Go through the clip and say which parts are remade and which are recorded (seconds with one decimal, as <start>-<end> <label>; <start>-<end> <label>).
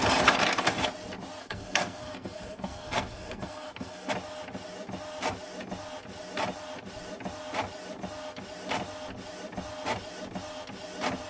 0.0-1.4 recorded; 1.4-4.1 remade; 4.1-11.3 recorded